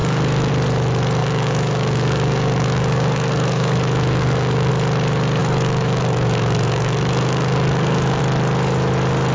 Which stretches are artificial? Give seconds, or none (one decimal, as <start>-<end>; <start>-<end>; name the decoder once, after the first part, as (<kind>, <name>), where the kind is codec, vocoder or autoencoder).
0.0-0.5 (codec, DAC); 1.2-4.7; 5.4-8.2